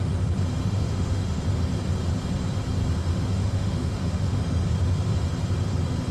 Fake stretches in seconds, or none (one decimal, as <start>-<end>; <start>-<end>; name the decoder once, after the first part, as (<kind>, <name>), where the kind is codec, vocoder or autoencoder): 0.6-1.4 (autoencoder, DAC-VAE); 3.0-4.4